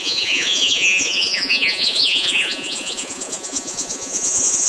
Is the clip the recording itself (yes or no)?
no